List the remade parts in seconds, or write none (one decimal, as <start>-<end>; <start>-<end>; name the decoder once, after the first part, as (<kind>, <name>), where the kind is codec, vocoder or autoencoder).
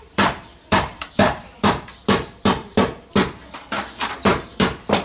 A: 0.0-2.0 (vocoder, BigVGAN v2); 4.3-5.0